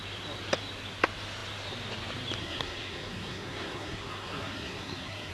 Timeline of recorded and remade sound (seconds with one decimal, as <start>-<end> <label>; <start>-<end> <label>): 0.0-2.4 recorded; 2.4-5.3 remade